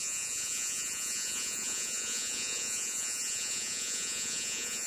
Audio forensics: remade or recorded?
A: remade